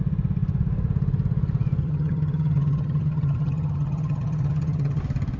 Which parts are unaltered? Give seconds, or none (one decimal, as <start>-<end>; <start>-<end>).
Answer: 0.0-1.8; 5.0-5.4